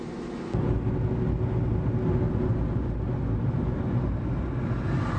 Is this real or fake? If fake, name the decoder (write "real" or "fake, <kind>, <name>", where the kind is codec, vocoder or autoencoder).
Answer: real